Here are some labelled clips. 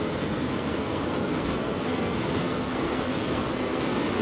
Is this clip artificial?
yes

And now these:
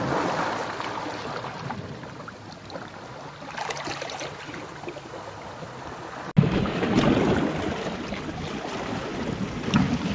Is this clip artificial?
no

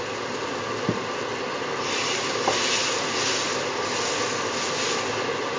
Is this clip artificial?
no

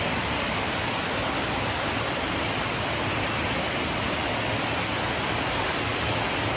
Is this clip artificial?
no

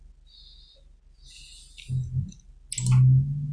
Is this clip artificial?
no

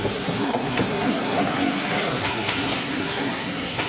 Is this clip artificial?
yes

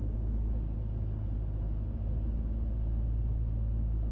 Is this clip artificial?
no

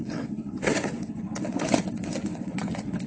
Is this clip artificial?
yes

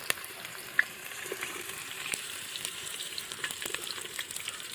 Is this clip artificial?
yes